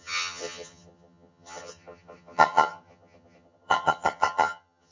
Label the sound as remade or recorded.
remade